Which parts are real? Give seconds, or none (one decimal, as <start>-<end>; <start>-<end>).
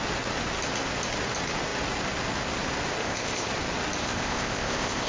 0.0-3.0; 3.5-4.0